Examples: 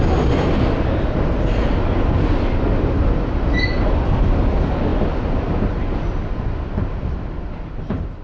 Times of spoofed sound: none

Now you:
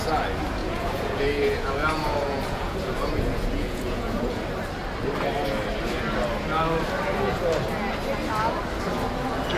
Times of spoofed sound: 0.6-4.3 (vocoder, Vocos)

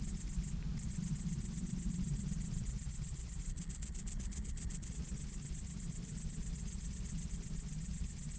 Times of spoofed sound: 3.5-4.9 (codec, HILCodec)